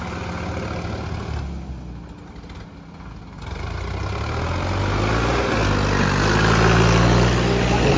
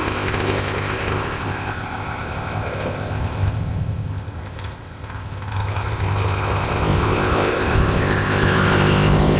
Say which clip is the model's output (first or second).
second